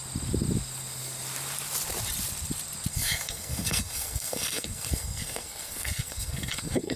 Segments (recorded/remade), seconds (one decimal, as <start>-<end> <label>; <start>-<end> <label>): 0.0-2.9 recorded; 2.9-7.0 remade